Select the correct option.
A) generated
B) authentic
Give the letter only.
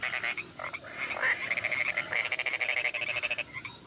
B